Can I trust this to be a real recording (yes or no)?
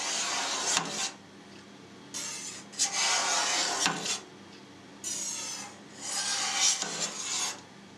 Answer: yes